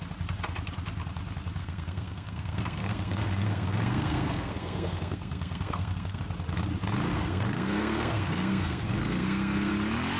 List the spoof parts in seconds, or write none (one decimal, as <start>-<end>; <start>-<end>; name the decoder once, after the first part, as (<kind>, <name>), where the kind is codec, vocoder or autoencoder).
1.6-6.2 (codec, SNAC); 7.1-9.7